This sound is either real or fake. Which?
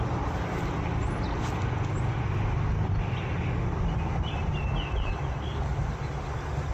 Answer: real